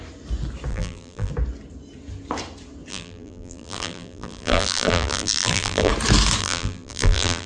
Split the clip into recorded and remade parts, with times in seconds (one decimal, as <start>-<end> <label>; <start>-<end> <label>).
0.0-0.7 recorded; 0.7-1.3 remade; 1.3-2.9 recorded; 2.9-5.9 remade; 5.9-6.4 recorded; 6.4-7.5 remade